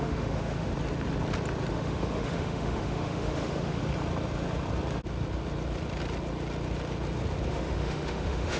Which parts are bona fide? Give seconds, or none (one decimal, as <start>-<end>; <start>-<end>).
0.7-1.7; 3.8-7.5